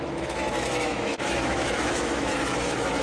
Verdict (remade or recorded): remade